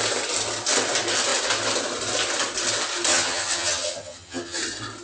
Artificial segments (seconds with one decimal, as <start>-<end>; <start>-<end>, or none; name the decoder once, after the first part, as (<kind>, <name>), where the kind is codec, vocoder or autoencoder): 3.1-4.6 (vocoder, HiFi-GAN)